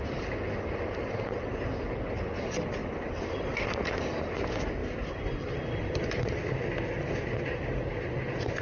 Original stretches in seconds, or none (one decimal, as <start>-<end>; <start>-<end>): 0.0-2.8; 4.3-4.8; 6.6-8.6